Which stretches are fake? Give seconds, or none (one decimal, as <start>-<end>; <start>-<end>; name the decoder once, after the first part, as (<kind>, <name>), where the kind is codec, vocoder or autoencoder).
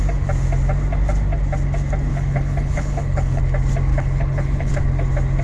2.1-3.4 (codec, HILCodec); 3.9-4.7